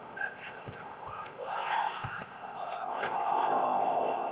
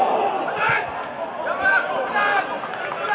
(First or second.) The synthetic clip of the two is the first